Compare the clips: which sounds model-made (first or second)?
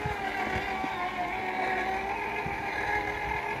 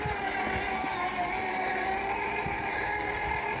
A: second